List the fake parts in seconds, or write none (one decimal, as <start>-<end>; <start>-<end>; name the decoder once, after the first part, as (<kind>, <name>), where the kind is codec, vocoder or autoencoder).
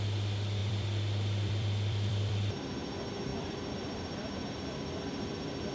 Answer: 0.6-2.7 (vocoder, BigVGAN v2); 3.3-5.7